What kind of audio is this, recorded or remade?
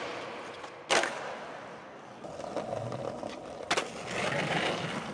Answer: recorded